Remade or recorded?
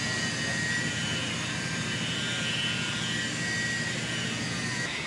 recorded